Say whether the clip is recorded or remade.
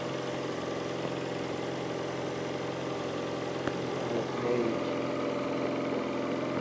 recorded